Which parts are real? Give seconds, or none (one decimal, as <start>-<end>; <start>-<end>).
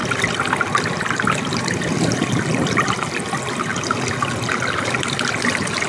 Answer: 3.2-5.9